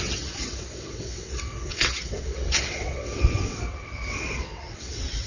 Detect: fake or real fake